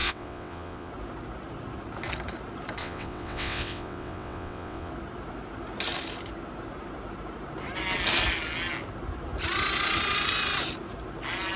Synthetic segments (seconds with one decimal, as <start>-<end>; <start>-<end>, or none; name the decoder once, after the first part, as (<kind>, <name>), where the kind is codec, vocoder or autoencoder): 0.0-0.9 (vocoder, WaveNeXt); 2.8-4.9